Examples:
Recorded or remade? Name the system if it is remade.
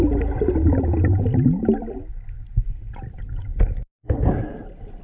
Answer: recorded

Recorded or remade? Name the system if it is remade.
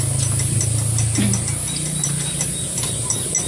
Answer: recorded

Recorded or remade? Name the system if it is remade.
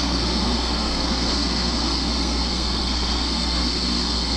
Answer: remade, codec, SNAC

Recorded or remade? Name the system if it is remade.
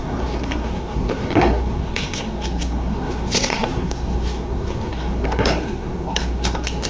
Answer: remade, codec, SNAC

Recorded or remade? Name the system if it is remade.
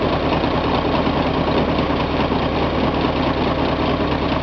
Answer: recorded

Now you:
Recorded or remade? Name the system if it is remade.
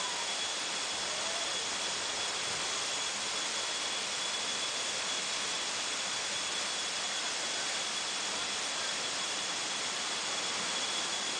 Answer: recorded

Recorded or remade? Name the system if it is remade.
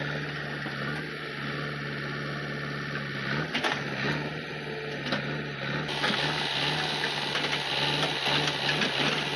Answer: recorded